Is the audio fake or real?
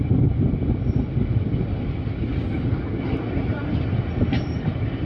real